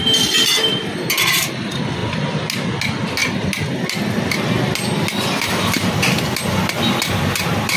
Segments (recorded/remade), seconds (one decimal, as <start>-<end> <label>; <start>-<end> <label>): 0.0-7.8 recorded